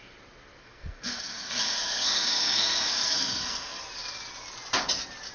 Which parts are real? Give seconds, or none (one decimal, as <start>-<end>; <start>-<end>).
0.0-0.6; 3.8-5.3